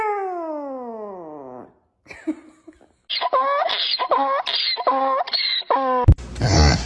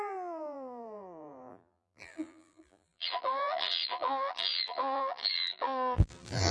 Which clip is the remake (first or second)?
second